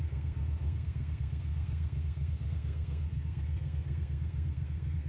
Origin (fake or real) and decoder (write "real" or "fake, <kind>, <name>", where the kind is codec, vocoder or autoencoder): fake, codec, SNAC